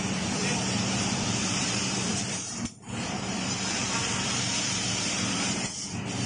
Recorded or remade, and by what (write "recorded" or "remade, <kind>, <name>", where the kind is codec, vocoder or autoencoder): remade, vocoder, BigVGAN v2